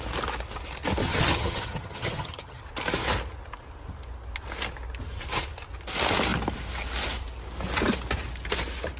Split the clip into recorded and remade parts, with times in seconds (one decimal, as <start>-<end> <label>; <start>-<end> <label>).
0.0-1.0 recorded; 1.0-2.6 remade; 2.6-9.0 recorded